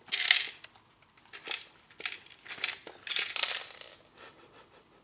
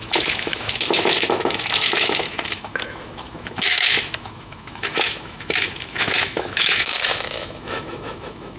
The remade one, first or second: second